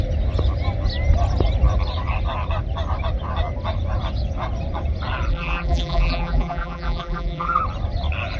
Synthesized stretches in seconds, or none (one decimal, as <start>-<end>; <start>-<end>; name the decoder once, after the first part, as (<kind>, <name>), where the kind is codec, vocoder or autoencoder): 5.3-7.6 (vocoder, BigVGAN v2)